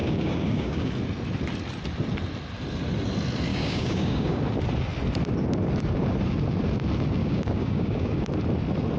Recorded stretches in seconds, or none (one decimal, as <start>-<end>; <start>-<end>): 0.9-3.5; 4.4-7.2; 8.3-9.0